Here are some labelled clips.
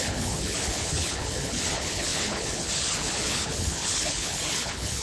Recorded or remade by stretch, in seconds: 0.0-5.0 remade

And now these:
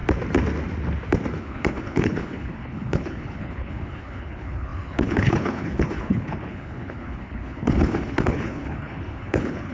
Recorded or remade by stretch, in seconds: 0.0-1.4 recorded; 1.4-9.7 remade

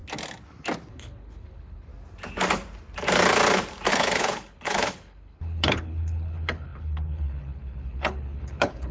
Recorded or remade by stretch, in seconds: 0.0-0.9 recorded; 0.9-1.9 remade; 1.9-3.9 recorded; 3.9-8.9 remade

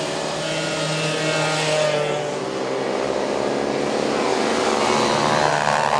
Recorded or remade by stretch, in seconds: 0.0-6.0 recorded